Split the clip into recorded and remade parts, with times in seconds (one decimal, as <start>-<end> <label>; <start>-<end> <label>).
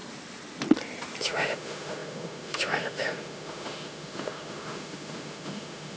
0.0-1.2 recorded; 1.2-6.0 remade